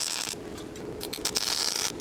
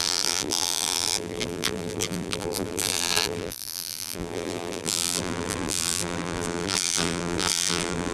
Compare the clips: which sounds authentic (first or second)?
first